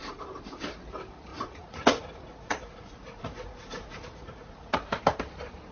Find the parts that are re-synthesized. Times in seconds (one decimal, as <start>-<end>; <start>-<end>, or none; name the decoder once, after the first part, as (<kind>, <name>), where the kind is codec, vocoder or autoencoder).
1.3-4.7 (vocoder, Vocos)